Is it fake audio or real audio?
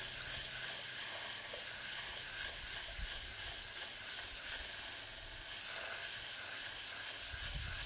real